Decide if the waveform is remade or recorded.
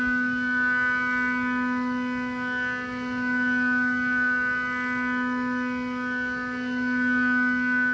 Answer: recorded